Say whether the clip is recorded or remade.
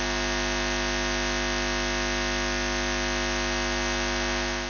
recorded